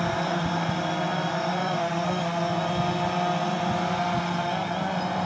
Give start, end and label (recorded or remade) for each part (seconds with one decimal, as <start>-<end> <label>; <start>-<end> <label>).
0.0-1.1 recorded; 1.1-2.1 remade; 2.1-5.3 recorded